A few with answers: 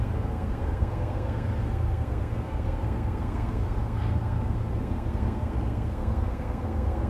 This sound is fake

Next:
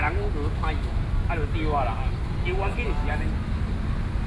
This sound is real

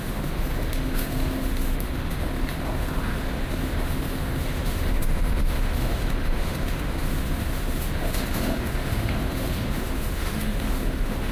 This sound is fake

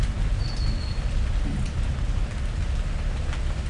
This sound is real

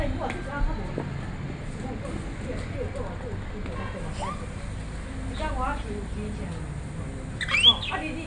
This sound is real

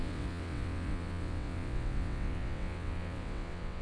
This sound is fake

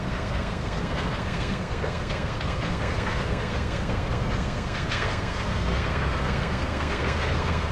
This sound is fake